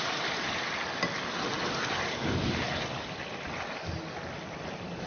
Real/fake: fake